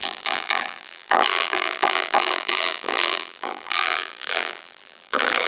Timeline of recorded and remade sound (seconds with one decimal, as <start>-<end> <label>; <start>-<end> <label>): 0.0-5.5 remade